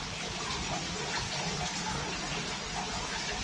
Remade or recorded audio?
recorded